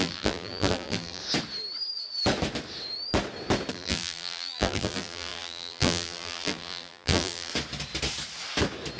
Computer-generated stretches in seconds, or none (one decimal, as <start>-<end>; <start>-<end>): 0.0-1.2; 3.7-7.5